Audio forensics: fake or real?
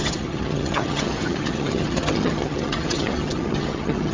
fake